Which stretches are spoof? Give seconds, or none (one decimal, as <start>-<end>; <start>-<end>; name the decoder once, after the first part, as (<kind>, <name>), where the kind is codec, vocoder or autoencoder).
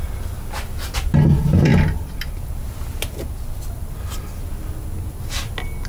none